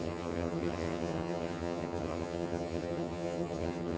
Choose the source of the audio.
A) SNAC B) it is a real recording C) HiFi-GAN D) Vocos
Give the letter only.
C